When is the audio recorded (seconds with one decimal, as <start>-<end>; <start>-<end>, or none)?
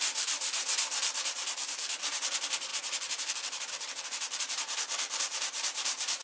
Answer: none